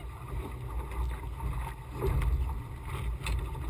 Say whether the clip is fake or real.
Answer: real